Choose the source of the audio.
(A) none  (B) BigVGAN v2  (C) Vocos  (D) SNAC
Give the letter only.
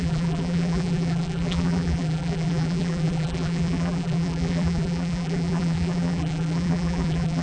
B